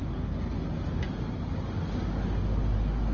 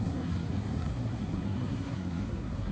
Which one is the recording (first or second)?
first